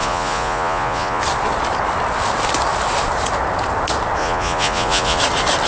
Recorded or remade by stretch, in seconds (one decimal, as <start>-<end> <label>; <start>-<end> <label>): 0.0-1.2 remade; 1.2-4.2 recorded; 4.2-5.2 remade; 5.2-5.7 recorded